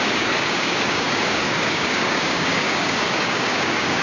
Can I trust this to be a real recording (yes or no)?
no